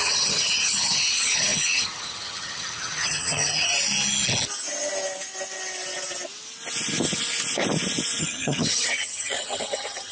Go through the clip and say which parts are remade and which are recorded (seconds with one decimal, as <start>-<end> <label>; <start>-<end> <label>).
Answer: 0.0-3.7 remade; 3.7-8.2 recorded; 8.2-10.1 remade